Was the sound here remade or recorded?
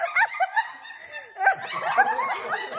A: recorded